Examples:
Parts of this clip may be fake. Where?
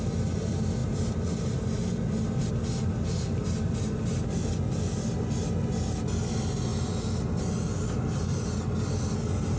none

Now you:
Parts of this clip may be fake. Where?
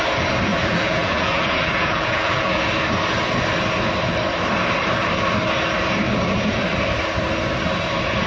0.5-2.6 (vocoder, BigVGAN v2)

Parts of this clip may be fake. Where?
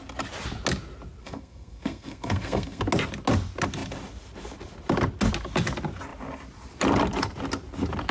1.2-2.8 (codec, SNAC)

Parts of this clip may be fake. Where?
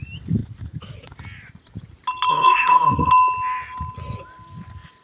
2.3-3.1 (codec, SNAC)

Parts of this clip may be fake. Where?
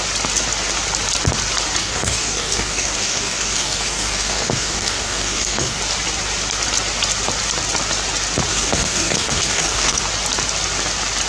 1.8-5.8 (codec, DAC); 8.5-10.0